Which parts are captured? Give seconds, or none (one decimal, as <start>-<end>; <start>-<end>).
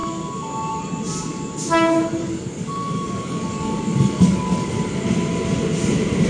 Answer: 0.8-1.3; 4.7-6.3